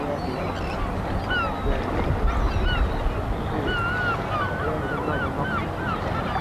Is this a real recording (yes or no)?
yes